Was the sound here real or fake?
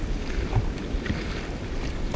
real